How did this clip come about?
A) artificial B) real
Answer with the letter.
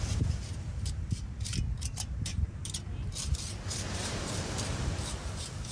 A